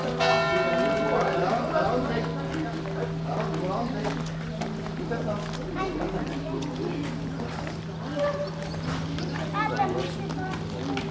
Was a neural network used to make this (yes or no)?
no